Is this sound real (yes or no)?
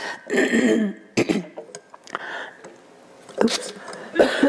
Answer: yes